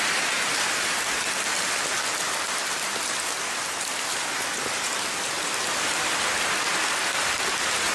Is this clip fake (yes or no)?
no